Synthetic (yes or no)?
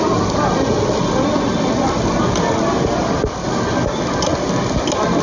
no